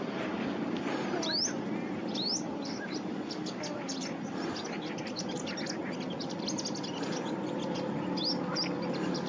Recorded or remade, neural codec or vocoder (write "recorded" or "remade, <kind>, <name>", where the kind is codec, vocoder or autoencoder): recorded